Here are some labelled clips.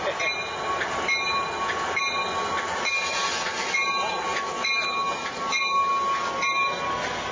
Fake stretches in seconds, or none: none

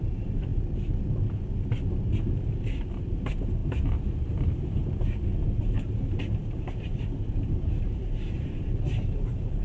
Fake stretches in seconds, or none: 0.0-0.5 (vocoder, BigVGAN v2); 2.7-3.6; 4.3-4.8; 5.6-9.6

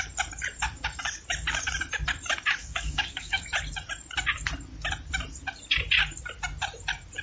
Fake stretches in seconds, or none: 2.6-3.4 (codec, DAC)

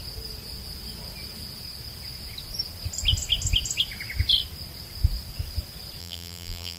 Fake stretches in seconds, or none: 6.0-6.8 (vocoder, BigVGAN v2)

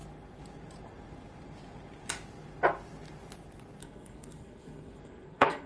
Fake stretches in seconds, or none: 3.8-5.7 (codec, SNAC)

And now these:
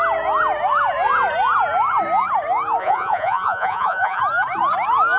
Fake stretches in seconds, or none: 2.8-4.2 (vocoder, Vocos)

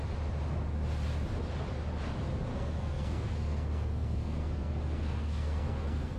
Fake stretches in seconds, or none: 2.5-6.2 (codec, SNAC)